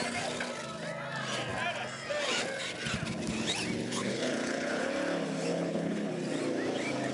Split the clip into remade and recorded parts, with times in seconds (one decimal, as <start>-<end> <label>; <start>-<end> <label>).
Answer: 0.0-3.9 recorded; 3.9-4.9 remade; 4.9-5.5 recorded; 5.5-6.1 remade; 6.1-7.1 recorded